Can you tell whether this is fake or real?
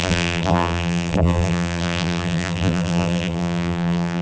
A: fake